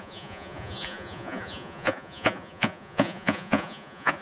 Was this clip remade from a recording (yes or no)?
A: yes